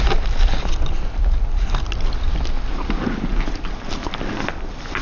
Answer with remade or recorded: recorded